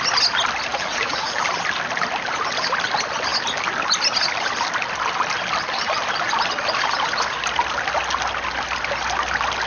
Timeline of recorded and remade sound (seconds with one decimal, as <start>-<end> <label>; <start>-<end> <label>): 0.0-0.7 recorded; 0.7-1.4 remade; 1.4-9.7 recorded